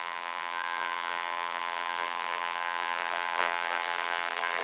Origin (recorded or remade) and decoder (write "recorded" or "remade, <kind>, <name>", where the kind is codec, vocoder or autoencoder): remade, vocoder, BigVGAN v2